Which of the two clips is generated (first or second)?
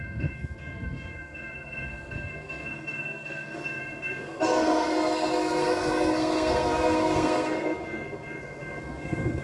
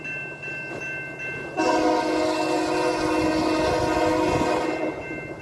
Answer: first